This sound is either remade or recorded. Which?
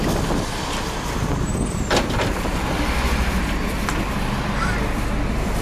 remade